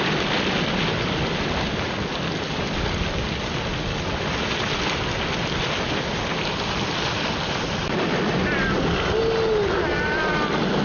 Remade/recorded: recorded